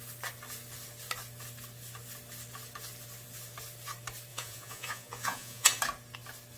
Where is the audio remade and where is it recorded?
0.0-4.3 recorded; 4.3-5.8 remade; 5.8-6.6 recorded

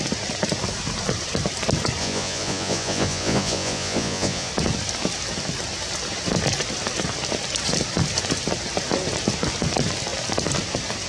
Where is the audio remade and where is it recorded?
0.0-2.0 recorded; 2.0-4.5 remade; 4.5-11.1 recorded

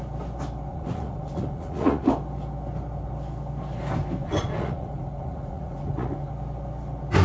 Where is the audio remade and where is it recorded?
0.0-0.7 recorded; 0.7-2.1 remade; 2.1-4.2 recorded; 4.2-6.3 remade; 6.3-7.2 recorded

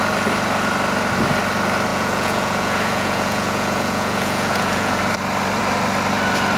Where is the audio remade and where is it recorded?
0.0-1.9 recorded; 1.9-5.0 remade; 5.0-6.6 recorded